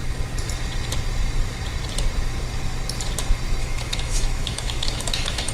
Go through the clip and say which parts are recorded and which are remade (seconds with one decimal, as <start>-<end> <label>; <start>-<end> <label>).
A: 0.0-3.6 recorded; 3.6-5.5 remade